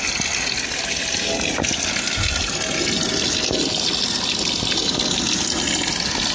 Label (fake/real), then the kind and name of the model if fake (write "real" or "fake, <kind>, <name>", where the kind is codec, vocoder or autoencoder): real